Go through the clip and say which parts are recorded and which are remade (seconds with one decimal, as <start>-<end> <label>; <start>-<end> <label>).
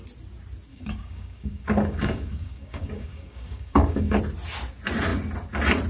0.0-0.7 recorded; 0.7-4.2 remade; 4.2-5.9 recorded